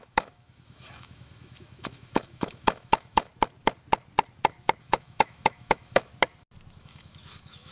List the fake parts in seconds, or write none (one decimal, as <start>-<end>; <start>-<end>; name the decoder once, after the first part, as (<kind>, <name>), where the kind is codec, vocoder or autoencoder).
0.0-3.3 (autoencoder, DAC-VAE); 4.8-6.1; 6.8-7.7